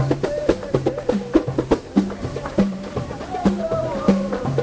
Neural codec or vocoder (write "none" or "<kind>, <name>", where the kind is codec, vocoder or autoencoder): vocoder, BigVGAN v2